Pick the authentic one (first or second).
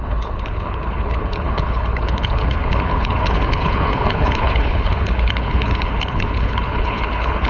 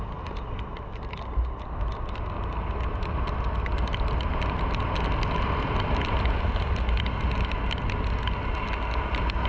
second